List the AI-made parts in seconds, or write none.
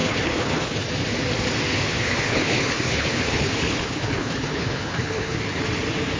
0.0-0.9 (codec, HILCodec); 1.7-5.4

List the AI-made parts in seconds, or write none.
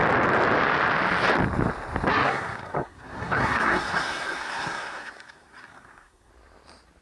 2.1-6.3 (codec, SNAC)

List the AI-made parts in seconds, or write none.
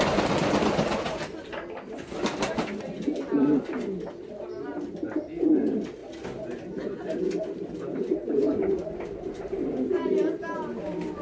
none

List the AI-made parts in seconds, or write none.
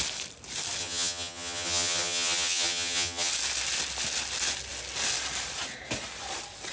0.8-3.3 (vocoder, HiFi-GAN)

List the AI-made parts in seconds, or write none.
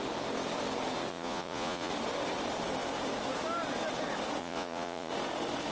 1.1-1.9 (vocoder, Vocos); 4.4-5.1